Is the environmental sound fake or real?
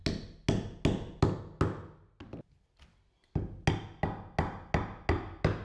real